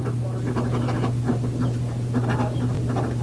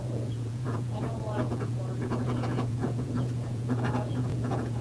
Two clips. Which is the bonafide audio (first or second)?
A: first